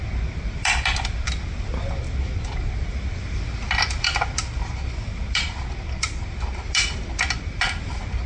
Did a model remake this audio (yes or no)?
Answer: no